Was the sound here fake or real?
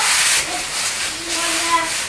real